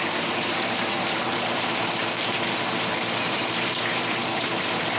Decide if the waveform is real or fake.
fake